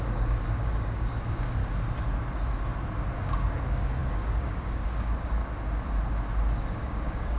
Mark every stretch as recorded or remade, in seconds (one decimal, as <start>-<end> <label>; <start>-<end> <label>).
0.0-1.6 remade; 1.6-3.2 recorded; 3.2-5.4 remade; 5.4-6.6 recorded; 6.6-7.4 remade